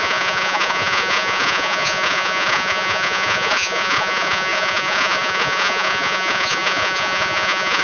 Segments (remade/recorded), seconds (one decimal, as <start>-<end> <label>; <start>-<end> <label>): 0.0-7.8 remade

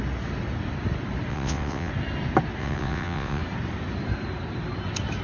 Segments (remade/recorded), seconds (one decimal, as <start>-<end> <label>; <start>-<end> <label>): 0.0-1.3 recorded; 1.3-1.9 remade; 1.9-2.6 recorded; 2.6-3.4 remade; 3.4-5.2 recorded

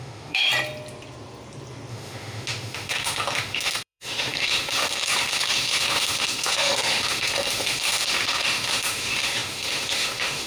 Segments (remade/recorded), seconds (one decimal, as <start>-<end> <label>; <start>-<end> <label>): 0.0-0.5 remade; 0.5-1.9 recorded; 1.9-10.5 remade

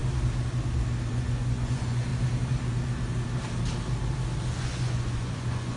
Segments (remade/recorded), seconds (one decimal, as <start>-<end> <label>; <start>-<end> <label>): 0.0-1.1 recorded; 1.1-2.1 remade; 2.1-4.6 recorded; 4.6-5.8 remade

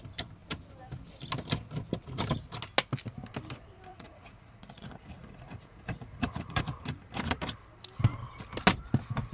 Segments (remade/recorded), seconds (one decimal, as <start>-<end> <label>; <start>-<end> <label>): 0.0-3.9 recorded; 3.9-6.6 remade; 6.6-9.3 recorded

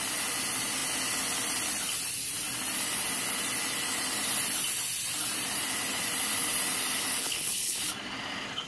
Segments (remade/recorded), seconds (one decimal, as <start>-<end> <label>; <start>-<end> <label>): 0.0-7.2 recorded; 7.2-7.8 remade; 7.8-8.7 recorded